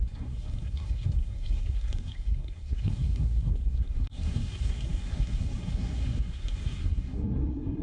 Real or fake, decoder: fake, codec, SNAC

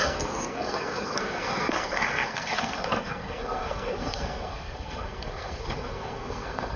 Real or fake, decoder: fake, codec, SNAC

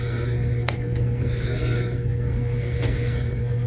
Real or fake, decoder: fake, codec, SNAC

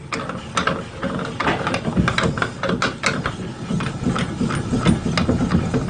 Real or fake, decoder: real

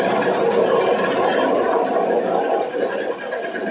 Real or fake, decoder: real